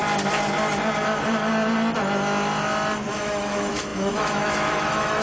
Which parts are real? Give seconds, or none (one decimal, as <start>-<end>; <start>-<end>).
0.0-3.1